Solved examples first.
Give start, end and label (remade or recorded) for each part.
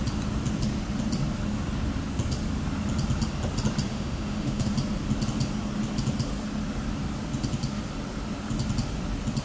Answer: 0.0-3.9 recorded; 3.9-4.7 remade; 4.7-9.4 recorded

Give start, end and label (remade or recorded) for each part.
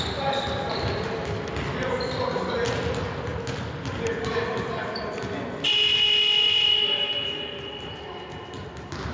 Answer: 0.0-9.1 recorded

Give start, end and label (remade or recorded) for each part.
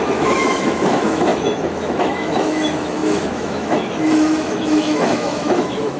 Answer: 0.0-6.0 remade